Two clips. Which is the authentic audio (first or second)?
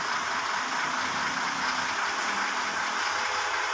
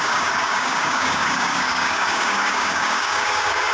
first